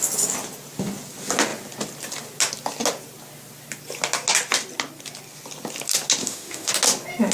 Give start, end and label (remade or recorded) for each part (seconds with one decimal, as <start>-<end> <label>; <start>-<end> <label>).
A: 0.0-6.2 recorded; 6.2-6.7 remade; 6.7-7.3 recorded

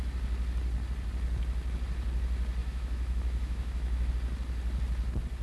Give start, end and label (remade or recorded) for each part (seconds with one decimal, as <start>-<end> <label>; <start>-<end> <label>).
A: 0.0-2.6 recorded; 2.6-4.1 remade; 4.1-5.4 recorded

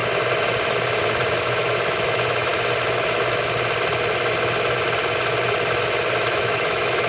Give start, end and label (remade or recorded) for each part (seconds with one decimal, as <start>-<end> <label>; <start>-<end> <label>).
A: 0.0-1.4 recorded; 1.4-2.5 remade; 2.5-6.3 recorded; 6.3-7.1 remade

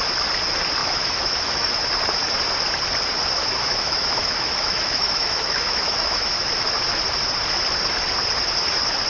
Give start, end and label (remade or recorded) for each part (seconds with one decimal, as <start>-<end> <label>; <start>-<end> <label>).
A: 0.0-0.8 recorded; 0.8-1.8 remade; 1.8-3.4 recorded; 3.4-6.5 remade; 6.5-9.1 recorded

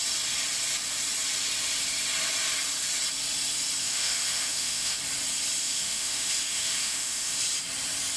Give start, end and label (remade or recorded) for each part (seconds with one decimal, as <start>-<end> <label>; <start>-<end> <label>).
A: 0.0-3.8 recorded; 3.8-5.0 remade; 5.0-5.6 recorded; 5.6-7.4 remade; 7.4-8.2 recorded

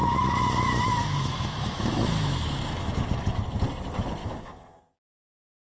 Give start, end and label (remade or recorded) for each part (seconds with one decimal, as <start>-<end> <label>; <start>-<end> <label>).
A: 0.0-3.4 remade; 3.4-4.2 recorded; 4.2-4.8 remade; 4.8-5.7 recorded

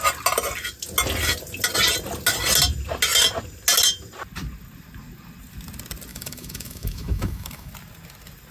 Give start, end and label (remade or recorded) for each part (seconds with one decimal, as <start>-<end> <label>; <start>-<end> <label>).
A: 0.0-6.1 recorded; 6.1-7.7 remade; 7.7-8.5 recorded

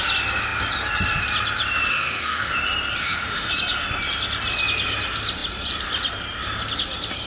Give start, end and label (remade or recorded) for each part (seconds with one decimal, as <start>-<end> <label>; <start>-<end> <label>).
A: 0.0-1.9 recorded; 1.9-2.5 remade; 2.5-3.0 recorded; 3.0-3.5 remade; 3.5-7.3 recorded